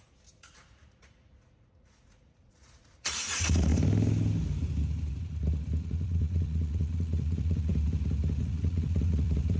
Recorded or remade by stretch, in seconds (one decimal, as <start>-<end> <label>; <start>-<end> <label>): 0.0-3.7 remade; 3.7-5.8 recorded; 5.8-7.7 remade; 7.7-8.4 recorded; 8.4-9.6 remade